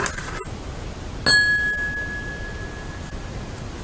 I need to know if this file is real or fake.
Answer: real